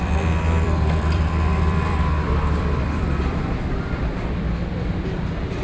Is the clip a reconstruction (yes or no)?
yes